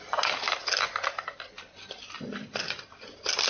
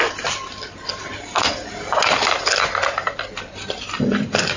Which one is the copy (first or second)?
first